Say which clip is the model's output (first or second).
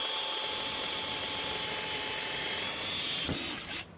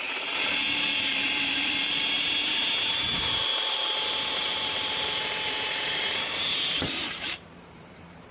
second